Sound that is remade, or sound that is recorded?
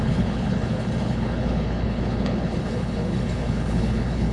remade